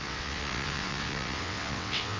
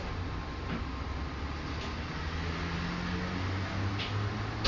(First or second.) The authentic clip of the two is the second